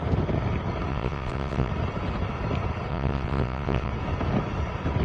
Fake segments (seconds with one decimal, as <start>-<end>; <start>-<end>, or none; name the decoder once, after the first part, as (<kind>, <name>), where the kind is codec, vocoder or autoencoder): 0.9-1.7 (vocoder, WaveNeXt); 2.9-3.9